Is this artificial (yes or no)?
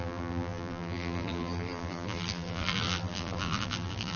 yes